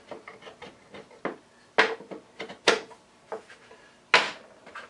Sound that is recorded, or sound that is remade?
recorded